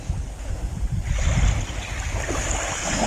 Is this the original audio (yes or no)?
yes